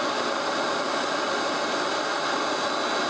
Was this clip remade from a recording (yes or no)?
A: no